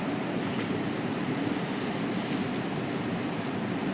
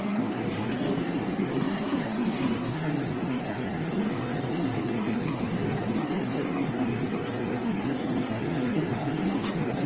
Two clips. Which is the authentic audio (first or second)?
first